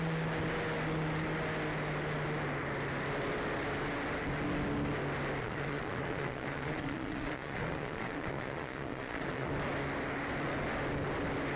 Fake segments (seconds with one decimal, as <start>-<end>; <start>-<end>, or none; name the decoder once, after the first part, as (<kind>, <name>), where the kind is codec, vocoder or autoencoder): 5.4-9.5 (vocoder, Vocos)